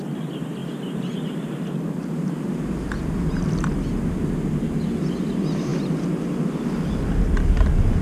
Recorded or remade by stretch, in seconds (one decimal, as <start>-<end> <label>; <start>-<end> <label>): 0.0-8.0 recorded